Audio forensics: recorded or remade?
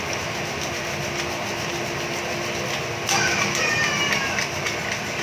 recorded